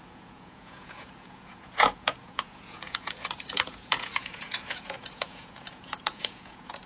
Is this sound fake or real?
fake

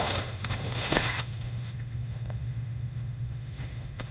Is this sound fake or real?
fake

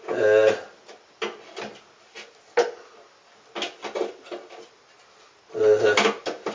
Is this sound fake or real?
real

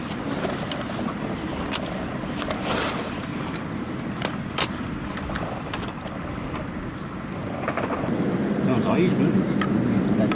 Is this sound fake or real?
real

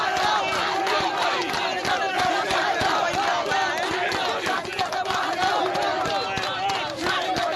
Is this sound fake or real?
real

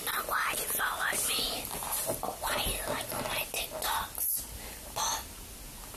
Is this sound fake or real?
real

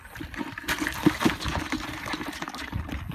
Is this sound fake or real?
real